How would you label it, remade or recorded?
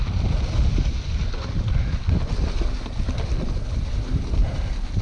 recorded